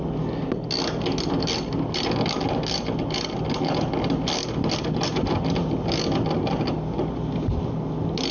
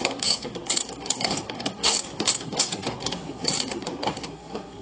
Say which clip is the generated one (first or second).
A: second